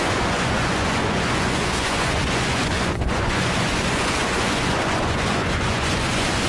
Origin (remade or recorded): remade